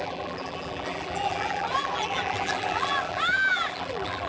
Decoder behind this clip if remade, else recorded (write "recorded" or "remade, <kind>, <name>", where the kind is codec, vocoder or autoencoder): remade, vocoder, BigVGAN v2